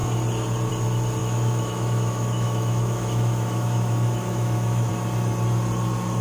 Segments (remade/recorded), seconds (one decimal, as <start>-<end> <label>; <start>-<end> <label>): 0.0-1.2 recorded; 1.2-4.9 remade; 4.9-6.2 recorded